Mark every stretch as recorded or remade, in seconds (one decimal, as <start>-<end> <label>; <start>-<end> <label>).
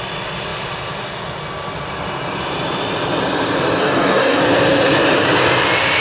0.0-3.8 recorded; 3.8-4.4 remade; 4.4-6.0 recorded